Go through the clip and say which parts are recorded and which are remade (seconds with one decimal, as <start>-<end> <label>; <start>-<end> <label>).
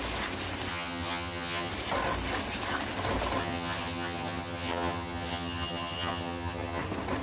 0.0-0.7 recorded; 0.7-1.7 remade; 1.7-3.4 recorded; 3.4-6.8 remade; 6.8-7.2 recorded